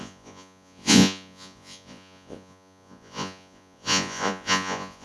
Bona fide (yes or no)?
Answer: no